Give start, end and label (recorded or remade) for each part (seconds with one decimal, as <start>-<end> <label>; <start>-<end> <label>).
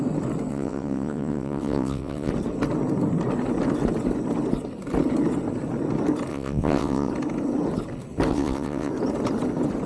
0.0-0.5 recorded; 0.5-2.3 remade; 2.3-6.3 recorded; 6.3-7.1 remade; 7.1-8.3 recorded; 8.3-8.9 remade; 8.9-9.9 recorded